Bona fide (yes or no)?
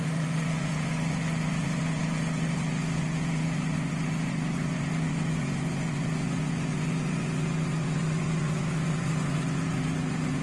no